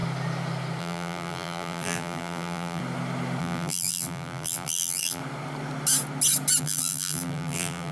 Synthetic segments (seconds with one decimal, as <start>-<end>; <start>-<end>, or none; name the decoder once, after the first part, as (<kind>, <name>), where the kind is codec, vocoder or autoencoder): 0.8-2.8 (vocoder, BigVGAN v2); 3.4-5.2; 6.6-7.9